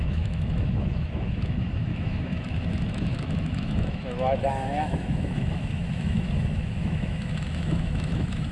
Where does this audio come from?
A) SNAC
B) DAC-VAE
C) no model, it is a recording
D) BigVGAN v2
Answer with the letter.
B